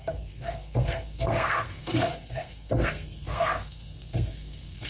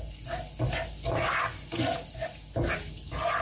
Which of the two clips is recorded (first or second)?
second